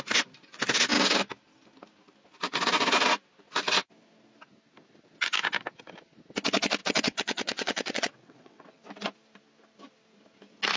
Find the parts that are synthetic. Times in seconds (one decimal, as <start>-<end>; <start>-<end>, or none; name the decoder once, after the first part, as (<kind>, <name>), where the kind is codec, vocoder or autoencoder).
6.8-8.8 (vocoder, WaveNeXt)

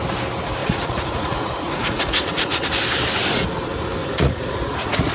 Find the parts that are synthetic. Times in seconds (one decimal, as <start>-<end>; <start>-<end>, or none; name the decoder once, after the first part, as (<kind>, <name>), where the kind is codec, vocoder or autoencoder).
0.6-2.7 (vocoder, Vocos); 4.0-5.1